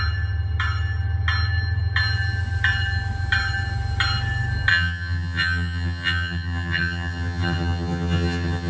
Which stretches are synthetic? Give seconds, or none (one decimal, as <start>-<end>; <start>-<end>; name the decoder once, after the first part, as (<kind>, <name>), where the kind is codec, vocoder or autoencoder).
4.7-8.7 (vocoder, HiFi-GAN)

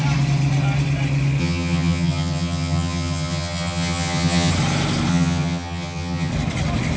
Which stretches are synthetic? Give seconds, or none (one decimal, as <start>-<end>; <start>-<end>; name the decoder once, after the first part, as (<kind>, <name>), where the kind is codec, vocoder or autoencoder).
1.4-4.5 (vocoder, HiFi-GAN); 5.1-6.3